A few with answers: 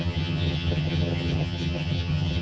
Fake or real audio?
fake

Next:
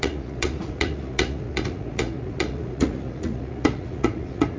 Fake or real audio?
fake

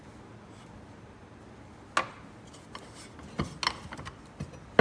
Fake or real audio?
real